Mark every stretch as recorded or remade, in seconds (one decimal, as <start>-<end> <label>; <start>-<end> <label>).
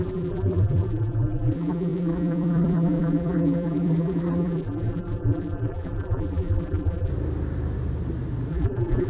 0.0-7.1 remade; 7.1-8.5 recorded; 8.5-9.1 remade